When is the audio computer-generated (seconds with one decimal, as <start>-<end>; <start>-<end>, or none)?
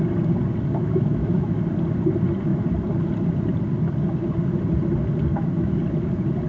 0.8-1.6; 5.3-5.8